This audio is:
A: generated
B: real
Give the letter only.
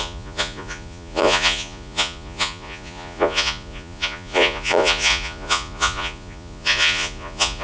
A